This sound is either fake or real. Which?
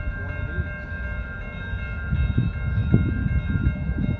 real